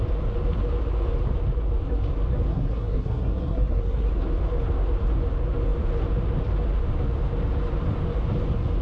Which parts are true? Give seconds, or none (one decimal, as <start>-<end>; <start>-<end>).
0.0-2.5; 4.1-8.8